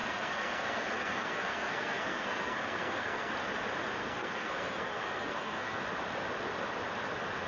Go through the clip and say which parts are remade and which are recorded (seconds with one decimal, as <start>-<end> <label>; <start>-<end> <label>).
0.0-3.3 remade; 3.3-4.0 recorded; 4.0-5.8 remade; 5.8-7.5 recorded